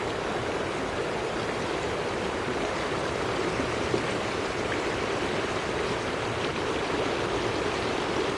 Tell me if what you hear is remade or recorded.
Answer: recorded